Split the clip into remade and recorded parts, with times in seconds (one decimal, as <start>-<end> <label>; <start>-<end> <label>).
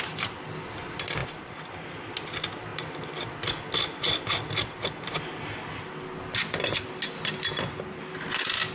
0.0-8.7 recorded